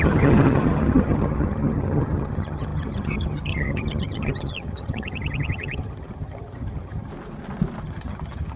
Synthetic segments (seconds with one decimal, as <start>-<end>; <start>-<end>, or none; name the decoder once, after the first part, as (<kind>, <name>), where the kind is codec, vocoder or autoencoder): 0.0-7.1 (vocoder, HiFi-GAN); 7.8-8.6